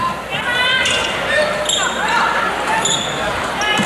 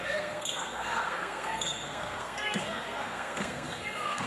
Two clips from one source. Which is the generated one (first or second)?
second